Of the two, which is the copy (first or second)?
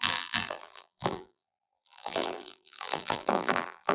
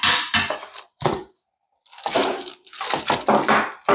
first